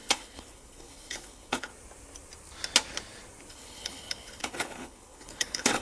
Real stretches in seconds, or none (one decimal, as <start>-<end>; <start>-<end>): 1.7-3.5